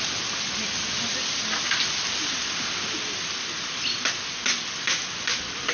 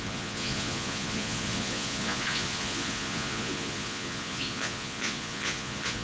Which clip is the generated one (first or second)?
second